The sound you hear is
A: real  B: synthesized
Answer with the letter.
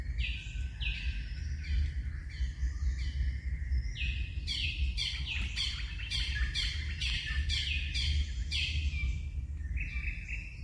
A